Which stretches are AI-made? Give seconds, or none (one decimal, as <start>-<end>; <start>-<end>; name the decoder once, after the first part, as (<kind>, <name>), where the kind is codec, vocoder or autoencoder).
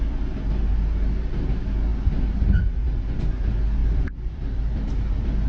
3.8-4.9 (vocoder, BigVGAN v2)